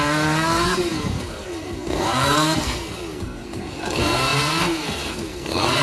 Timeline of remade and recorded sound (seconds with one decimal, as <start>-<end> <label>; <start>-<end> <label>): 0.0-5.8 remade

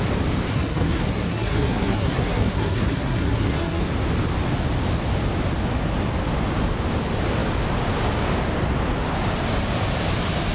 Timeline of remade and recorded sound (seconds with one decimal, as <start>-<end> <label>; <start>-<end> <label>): 0.0-0.5 recorded; 0.5-3.8 remade; 3.8-10.5 recorded